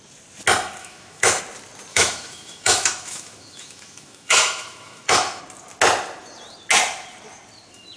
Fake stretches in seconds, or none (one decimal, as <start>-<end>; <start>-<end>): 0.8-1.4; 1.9-5.4